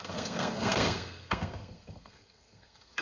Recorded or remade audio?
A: remade